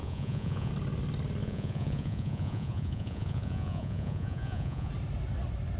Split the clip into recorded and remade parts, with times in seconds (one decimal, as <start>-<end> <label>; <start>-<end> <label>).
0.0-0.7 remade; 0.7-1.4 recorded; 1.4-4.9 remade; 4.9-5.8 recorded